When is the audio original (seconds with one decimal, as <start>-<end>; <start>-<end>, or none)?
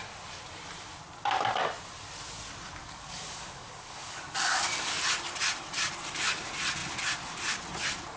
0.0-2.8; 4.9-8.2